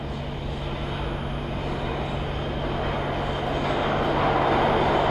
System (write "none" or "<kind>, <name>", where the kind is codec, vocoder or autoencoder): none